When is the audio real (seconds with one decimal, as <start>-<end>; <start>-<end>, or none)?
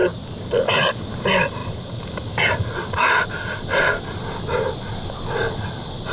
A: 0.0-6.1